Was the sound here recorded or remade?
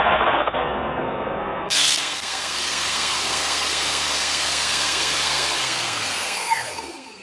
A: remade